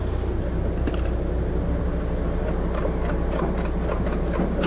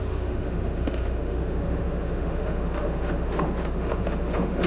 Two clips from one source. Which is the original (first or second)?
first